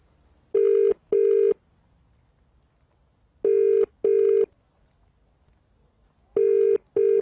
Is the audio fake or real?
real